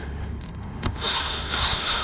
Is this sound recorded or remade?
remade